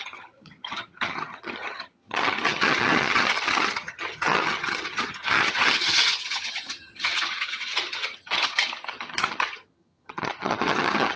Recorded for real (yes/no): no